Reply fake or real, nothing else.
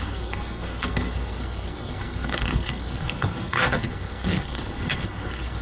fake